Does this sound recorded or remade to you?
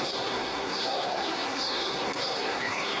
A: remade